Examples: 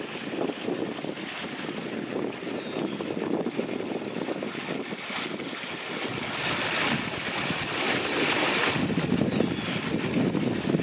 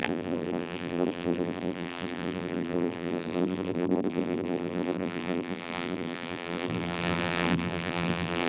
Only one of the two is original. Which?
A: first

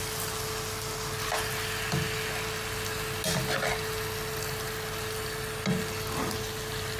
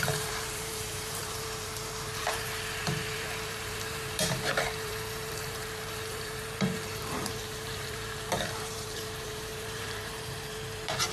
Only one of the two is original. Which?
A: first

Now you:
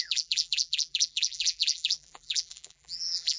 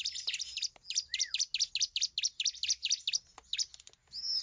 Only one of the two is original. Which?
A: second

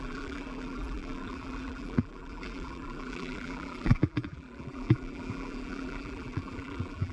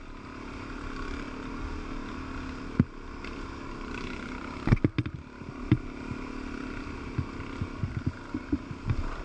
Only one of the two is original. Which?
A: second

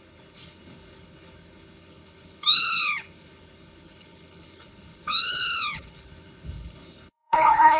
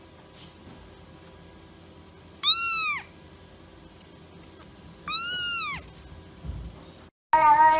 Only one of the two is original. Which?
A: second